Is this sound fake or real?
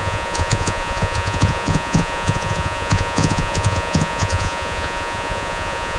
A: fake